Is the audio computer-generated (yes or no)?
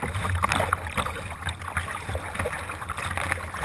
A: no